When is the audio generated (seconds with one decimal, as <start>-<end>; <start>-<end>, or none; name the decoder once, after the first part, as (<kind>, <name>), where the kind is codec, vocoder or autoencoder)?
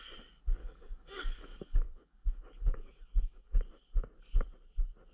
0.6-3.7 (codec, DAC)